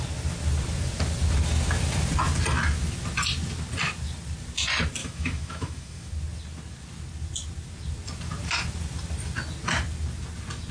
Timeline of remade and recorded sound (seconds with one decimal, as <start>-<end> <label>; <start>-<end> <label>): 0.0-5.0 recorded; 5.0-6.1 remade; 6.1-10.7 recorded